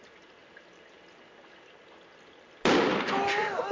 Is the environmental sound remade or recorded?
recorded